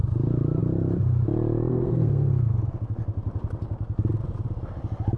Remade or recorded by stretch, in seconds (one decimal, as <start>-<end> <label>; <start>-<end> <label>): 0.0-1.7 recorded; 1.7-2.3 remade; 2.3-5.2 recorded